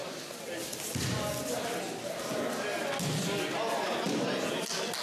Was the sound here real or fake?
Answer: real